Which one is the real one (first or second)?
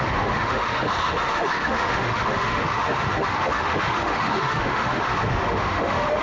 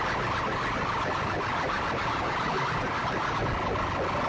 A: second